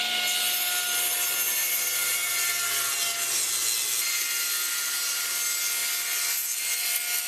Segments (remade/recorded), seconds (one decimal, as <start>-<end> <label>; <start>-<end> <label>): 0.0-7.3 recorded